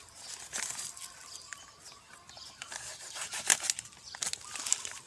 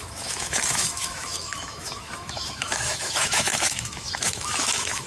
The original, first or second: first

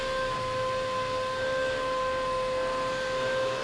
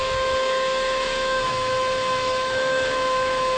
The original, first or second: first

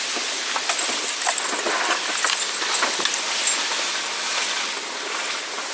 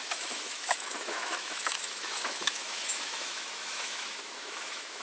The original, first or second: first